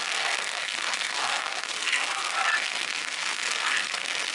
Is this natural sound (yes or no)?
no